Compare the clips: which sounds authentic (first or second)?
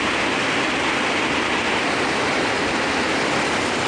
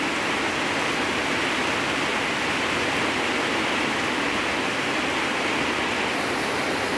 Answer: second